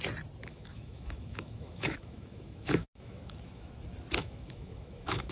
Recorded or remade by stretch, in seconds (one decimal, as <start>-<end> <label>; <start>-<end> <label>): 0.0-0.5 recorded; 0.5-3.7 remade; 3.7-4.2 recorded; 4.2-5.3 remade